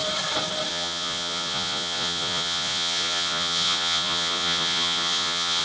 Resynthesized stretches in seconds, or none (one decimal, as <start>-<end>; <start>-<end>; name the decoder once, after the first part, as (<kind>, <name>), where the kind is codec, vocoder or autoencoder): 0.7-5.6 (vocoder, Vocos)

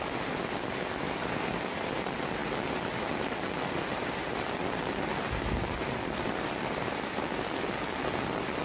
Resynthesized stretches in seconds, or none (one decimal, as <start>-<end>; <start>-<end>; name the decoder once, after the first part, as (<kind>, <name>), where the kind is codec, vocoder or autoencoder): none

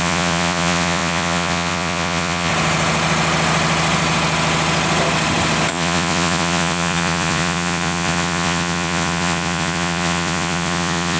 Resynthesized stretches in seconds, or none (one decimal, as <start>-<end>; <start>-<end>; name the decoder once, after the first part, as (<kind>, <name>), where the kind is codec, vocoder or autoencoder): 0.0-2.5 (vocoder, Vocos); 5.7-11.2

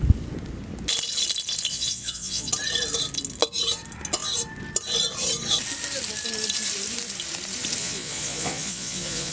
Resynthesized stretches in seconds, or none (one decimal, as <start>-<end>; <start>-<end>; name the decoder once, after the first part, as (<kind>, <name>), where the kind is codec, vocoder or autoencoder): 1.7-2.5 (vocoder, Vocos); 7.8-9.3

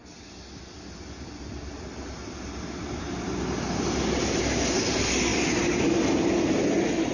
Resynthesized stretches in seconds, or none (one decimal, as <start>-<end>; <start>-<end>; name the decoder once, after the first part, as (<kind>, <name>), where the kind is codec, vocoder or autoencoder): none

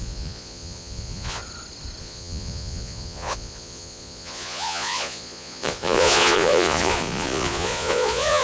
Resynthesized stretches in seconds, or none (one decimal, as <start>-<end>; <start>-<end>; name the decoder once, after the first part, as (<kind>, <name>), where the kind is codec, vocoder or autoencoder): 0.0-1.4 (vocoder, Vocos); 2.0-8.4